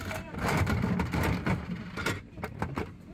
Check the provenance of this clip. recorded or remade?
recorded